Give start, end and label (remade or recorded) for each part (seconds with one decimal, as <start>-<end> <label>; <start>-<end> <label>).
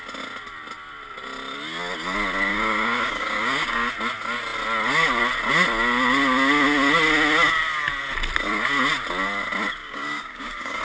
0.0-2.5 recorded; 2.5-3.9 remade; 3.9-9.8 recorded; 9.8-10.8 remade